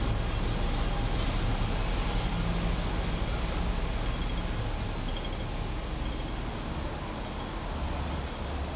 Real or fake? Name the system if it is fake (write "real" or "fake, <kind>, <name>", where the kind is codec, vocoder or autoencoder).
real